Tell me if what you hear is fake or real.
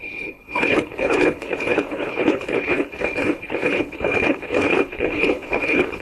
fake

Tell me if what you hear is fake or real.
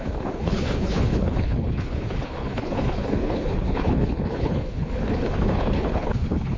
fake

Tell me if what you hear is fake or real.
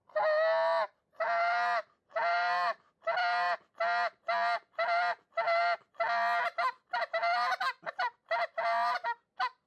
real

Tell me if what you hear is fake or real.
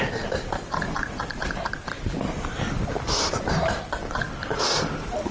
real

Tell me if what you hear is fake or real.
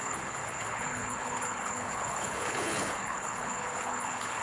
fake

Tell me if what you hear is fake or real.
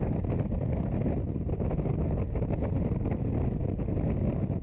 real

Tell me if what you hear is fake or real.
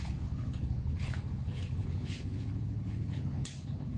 fake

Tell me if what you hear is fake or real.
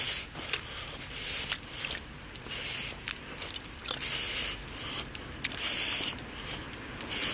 real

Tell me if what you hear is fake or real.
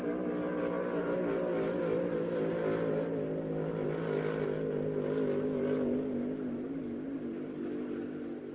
real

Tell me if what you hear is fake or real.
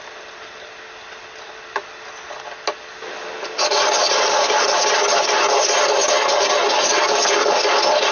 real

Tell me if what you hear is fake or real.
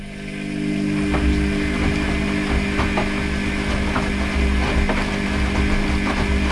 real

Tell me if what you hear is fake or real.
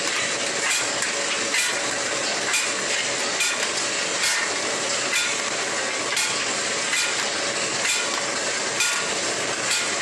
real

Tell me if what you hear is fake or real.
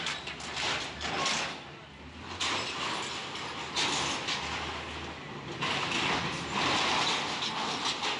real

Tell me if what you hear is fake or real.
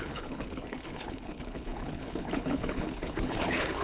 fake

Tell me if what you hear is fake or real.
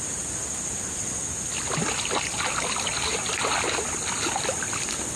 real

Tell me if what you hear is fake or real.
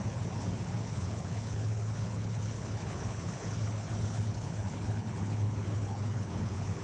fake